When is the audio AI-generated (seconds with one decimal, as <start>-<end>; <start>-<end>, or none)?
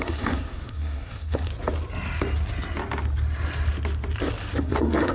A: 0.0-1.5; 4.6-5.1